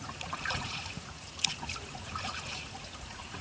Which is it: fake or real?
fake